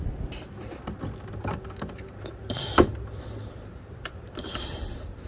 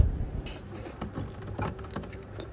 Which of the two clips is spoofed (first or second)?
first